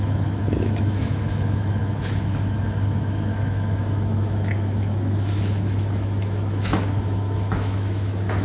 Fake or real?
fake